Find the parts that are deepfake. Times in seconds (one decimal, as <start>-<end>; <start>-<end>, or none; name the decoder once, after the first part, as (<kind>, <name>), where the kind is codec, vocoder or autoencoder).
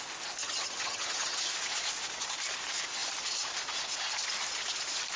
0.4-1.5 (vocoder, HiFi-GAN)